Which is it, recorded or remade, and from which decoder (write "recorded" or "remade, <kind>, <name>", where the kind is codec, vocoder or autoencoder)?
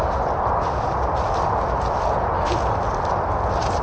recorded